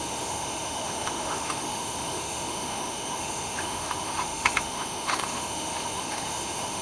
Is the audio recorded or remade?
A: remade